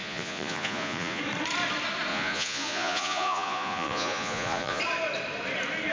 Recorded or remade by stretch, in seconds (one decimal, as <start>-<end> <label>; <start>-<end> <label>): 0.0-1.2 remade; 1.2-2.1 recorded; 2.1-4.8 remade; 4.8-5.9 recorded